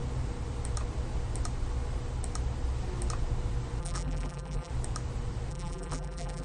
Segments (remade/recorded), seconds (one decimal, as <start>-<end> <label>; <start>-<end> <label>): 0.0-3.8 recorded; 3.8-4.7 remade; 4.7-5.5 recorded; 5.5-6.4 remade